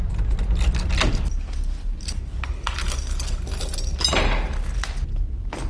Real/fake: real